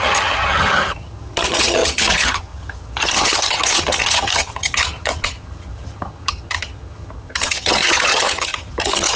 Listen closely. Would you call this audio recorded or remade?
remade